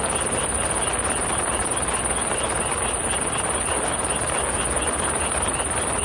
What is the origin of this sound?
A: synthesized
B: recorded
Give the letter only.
B